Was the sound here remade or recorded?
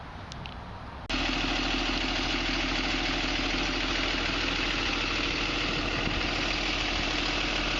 recorded